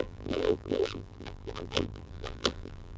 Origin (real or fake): fake